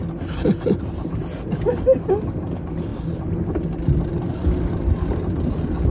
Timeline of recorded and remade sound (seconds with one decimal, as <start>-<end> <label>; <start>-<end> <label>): 0.0-5.9 recorded